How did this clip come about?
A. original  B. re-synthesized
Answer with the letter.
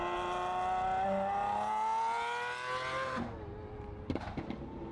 A